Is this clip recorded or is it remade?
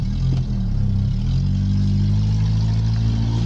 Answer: recorded